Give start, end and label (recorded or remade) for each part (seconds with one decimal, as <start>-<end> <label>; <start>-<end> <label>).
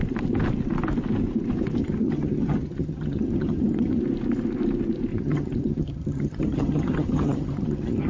0.0-1.8 recorded; 1.8-4.0 remade; 4.0-5.1 recorded; 5.1-8.1 remade